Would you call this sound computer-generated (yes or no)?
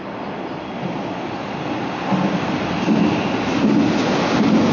no